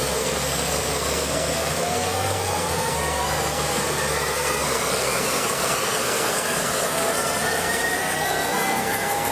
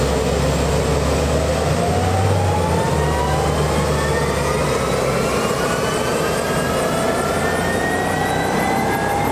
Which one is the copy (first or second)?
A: first